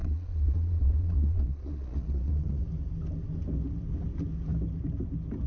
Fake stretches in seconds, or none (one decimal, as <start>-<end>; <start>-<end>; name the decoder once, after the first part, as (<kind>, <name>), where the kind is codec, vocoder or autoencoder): 0.0-2.6 (vocoder, Vocos)